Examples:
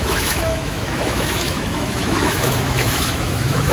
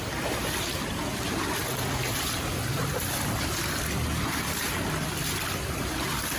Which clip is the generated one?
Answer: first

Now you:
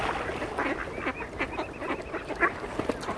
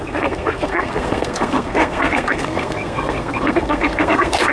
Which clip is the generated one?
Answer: second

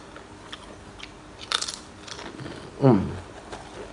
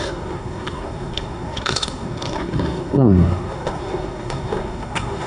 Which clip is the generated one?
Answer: second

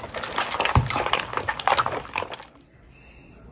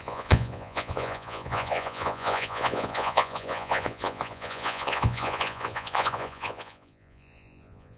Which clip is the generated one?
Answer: second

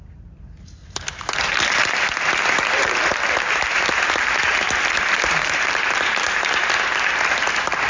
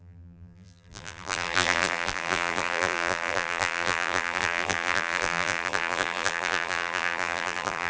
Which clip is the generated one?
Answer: second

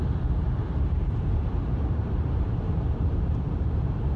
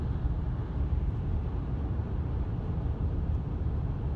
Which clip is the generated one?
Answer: first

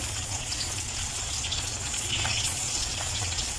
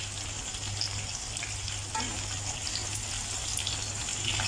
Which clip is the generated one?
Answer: first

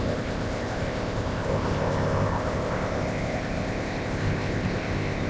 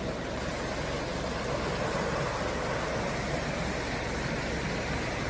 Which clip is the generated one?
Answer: first